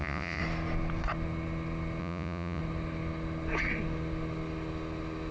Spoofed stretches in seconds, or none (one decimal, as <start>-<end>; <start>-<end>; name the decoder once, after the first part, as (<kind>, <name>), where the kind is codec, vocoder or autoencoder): 0.0-0.4 (vocoder, Vocos); 2.0-2.6